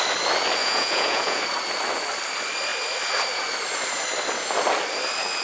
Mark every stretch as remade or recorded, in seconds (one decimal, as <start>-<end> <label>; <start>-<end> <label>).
0.0-0.6 recorded; 0.6-1.4 remade; 1.4-5.4 recorded